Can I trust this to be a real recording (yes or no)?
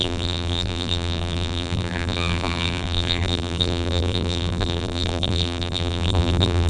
no